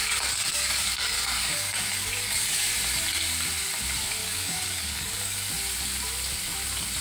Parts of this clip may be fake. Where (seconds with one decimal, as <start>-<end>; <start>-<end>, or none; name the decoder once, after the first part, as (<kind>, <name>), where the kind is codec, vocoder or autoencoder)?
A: 0.0-2.7 (codec, DAC); 4.2-5.5

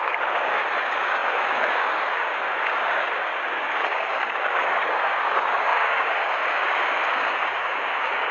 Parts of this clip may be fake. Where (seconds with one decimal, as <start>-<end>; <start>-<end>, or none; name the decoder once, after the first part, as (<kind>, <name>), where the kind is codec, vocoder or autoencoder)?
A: 0.0-8.3 (codec, DAC)

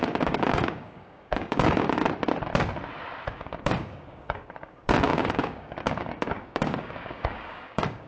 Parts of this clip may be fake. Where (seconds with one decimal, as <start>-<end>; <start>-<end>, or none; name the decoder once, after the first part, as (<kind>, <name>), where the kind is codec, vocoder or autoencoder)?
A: 0.0-2.0 (codec, DAC); 3.3-8.1

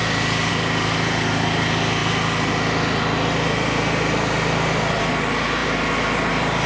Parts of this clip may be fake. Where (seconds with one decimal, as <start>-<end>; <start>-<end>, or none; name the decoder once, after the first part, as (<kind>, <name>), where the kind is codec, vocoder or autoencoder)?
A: none

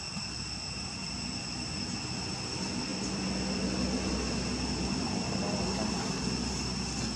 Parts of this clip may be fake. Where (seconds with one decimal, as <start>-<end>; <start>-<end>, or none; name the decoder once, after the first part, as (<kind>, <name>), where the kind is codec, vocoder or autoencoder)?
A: none

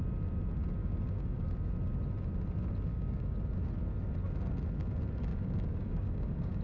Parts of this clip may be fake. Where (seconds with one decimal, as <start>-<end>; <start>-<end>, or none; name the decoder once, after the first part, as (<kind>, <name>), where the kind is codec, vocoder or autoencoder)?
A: 0.8-1.5 (codec, DAC); 2.9-3.4; 5.3-6.6